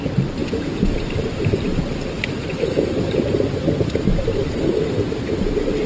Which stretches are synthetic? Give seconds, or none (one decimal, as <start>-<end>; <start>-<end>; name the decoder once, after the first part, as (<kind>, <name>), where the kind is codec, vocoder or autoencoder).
none